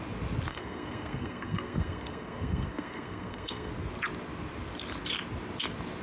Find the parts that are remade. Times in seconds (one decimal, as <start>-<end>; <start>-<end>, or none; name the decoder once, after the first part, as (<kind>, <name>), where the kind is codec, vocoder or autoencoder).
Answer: 0.5-3.7 (codec, SNAC)